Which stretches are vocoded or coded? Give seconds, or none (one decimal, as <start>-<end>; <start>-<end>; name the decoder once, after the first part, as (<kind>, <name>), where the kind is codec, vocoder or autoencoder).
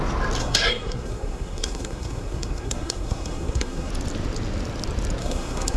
0.4-3.9 (codec, SNAC); 5.2-5.8